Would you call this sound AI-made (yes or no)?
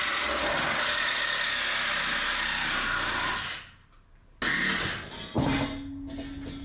no